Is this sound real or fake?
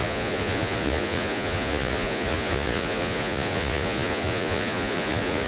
fake